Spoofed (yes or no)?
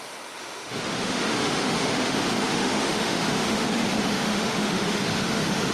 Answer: yes